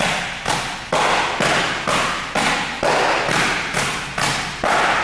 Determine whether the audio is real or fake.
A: real